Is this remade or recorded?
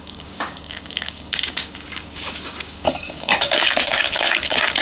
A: remade